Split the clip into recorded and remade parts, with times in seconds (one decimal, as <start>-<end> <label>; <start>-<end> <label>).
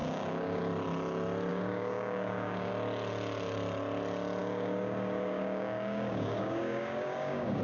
0.0-0.6 remade; 0.6-1.5 recorded; 1.5-2.7 remade; 2.7-4.4 recorded; 4.4-7.6 remade